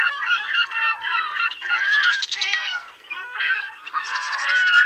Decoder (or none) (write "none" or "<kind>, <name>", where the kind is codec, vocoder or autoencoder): codec, SNAC